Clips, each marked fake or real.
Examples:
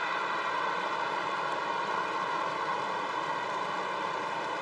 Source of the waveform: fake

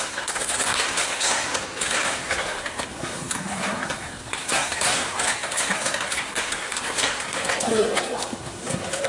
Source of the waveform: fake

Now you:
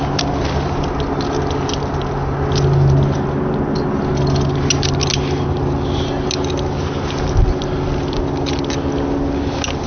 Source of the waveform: real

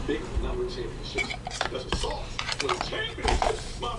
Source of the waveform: fake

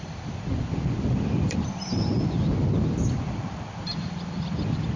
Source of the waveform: fake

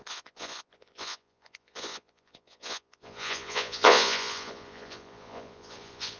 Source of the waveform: fake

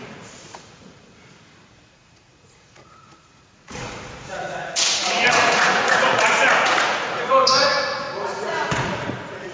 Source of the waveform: fake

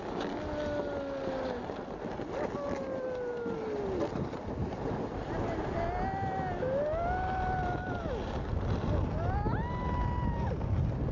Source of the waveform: real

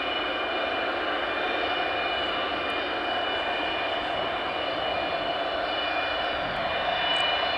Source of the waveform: real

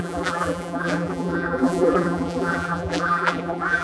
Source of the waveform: fake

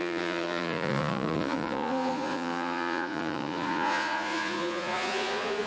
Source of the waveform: fake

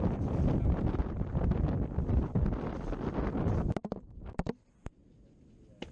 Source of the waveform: real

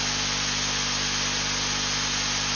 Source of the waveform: real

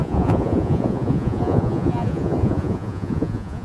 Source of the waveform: fake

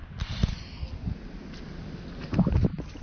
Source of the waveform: real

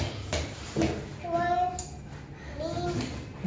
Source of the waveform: real